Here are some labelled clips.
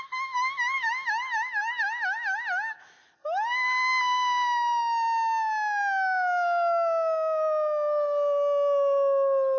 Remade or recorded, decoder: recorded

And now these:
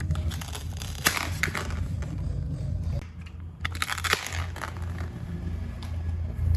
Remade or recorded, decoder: recorded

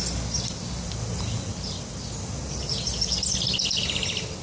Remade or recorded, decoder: recorded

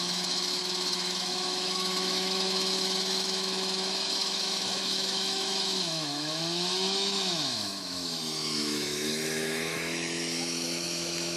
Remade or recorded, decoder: remade, autoencoder, DAC-VAE